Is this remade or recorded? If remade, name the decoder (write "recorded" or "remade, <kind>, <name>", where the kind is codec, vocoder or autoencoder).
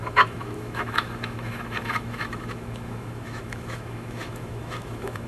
remade, autoencoder, DAC-VAE